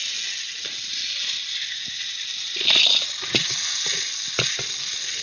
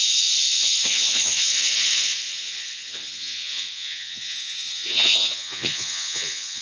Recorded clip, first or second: first